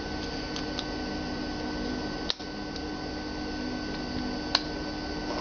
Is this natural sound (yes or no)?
yes